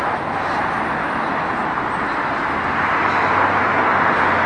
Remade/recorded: recorded